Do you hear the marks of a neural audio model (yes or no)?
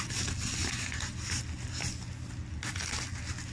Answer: no